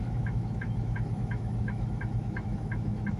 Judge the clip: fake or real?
fake